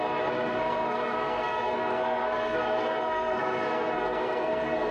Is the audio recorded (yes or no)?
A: no